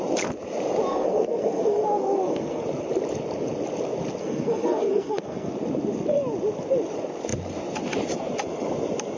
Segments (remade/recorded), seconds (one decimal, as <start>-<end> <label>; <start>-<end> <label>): 0.0-0.9 recorded; 0.9-2.6 remade; 2.6-4.2 recorded; 4.2-5.5 remade; 5.5-9.2 recorded